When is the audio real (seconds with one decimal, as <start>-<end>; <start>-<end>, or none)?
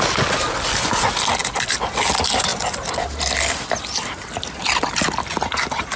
0.0-6.0